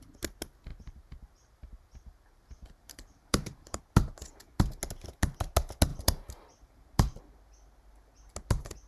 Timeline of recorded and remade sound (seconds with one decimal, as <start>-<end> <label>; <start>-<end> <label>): 0.0-0.7 recorded; 0.7-3.8 remade; 3.8-5.9 recorded; 5.9-7.2 remade; 7.2-8.9 recorded